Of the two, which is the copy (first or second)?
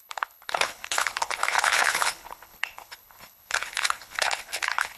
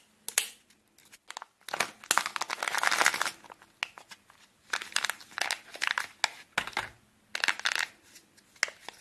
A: first